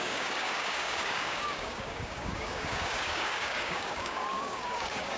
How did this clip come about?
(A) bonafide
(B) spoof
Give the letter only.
B